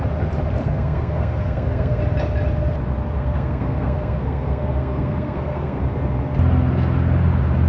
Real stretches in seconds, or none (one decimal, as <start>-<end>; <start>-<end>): 0.0-0.6; 2.0-3.2; 5.8-7.7